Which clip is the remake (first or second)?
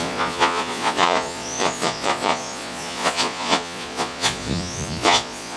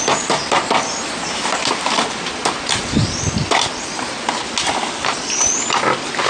first